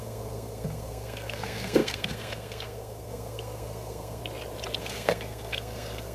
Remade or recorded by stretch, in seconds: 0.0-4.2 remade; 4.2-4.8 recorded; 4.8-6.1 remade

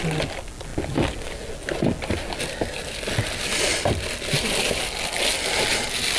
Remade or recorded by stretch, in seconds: 0.0-6.2 recorded

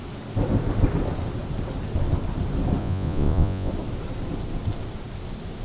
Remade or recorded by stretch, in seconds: 0.0-2.8 recorded; 2.8-3.7 remade; 3.7-5.6 recorded

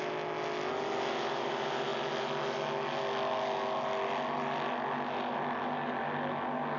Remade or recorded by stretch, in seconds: 0.0-6.8 recorded

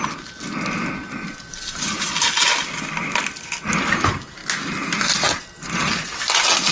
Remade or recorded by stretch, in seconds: 0.0-6.7 recorded